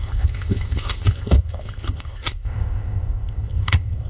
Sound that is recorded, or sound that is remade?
remade